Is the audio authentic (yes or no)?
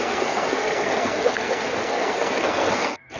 no